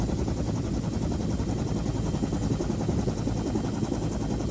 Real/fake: real